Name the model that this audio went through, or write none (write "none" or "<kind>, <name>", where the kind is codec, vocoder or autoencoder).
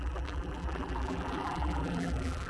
vocoder, BigVGAN v2